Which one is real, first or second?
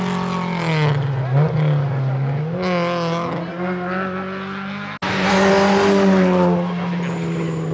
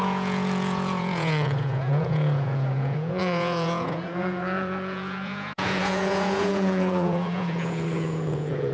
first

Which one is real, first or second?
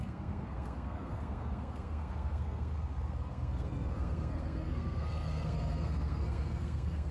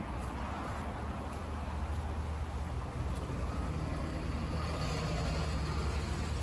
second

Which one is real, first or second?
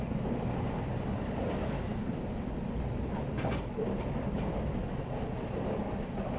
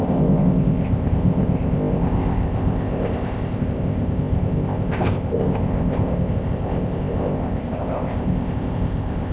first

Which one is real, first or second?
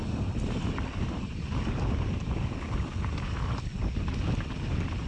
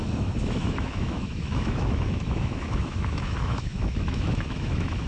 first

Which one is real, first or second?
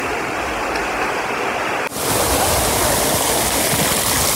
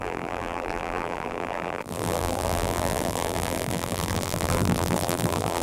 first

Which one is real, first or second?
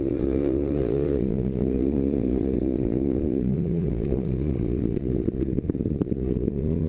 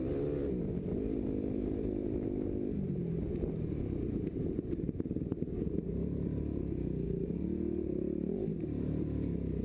second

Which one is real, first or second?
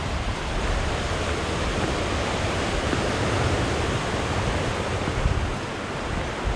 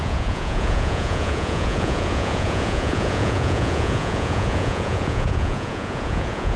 first